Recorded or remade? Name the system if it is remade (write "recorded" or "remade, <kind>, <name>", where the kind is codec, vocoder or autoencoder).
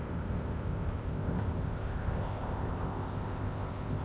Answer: remade, codec, ZipCodec